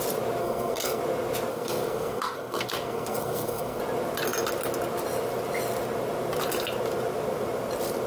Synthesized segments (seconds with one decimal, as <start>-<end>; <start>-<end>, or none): 0.4-1.0; 1.5-3.8